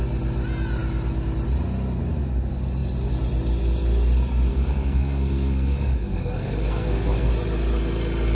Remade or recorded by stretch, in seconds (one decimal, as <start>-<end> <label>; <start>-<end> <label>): 0.0-4.5 recorded; 4.5-7.3 remade; 7.3-8.3 recorded